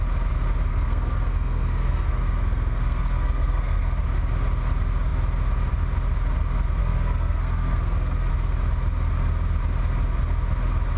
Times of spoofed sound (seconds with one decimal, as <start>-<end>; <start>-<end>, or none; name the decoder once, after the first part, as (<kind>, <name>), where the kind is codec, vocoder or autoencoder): 0.7-4.0 (codec, SNAC); 6.8-8.3